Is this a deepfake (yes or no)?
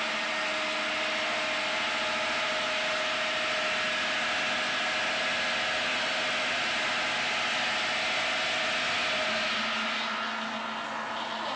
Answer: no